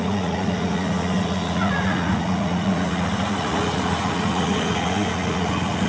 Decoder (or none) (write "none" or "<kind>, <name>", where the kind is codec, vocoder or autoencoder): vocoder, Vocos